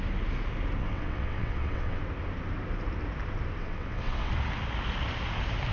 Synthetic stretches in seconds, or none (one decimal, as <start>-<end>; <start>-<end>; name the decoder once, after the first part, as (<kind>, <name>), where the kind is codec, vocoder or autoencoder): 0.8-2.0 (vocoder, WaveNeXt); 3.6-4.3

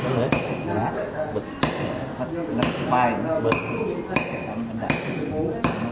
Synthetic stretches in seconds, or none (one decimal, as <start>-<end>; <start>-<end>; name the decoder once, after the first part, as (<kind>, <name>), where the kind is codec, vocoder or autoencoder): none

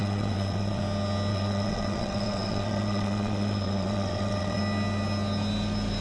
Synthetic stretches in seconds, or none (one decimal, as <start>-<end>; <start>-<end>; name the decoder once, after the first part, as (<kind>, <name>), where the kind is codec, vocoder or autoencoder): 0.0-0.8 (vocoder, WaveNeXt); 1.3-4.6

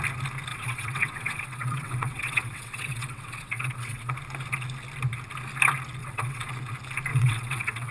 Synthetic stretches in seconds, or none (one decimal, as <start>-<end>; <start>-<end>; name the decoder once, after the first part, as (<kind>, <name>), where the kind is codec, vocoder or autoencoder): 0.5-4.1 (vocoder, WaveNeXt); 6.0-6.5; 7.1-7.9

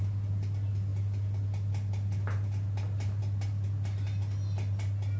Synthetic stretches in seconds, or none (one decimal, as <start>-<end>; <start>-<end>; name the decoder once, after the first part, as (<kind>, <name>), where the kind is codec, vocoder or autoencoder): none